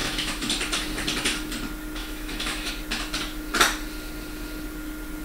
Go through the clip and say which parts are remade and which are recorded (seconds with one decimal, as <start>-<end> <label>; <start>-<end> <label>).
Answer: 0.0-0.5 remade; 0.5-2.0 recorded; 2.0-2.7 remade; 2.7-5.2 recorded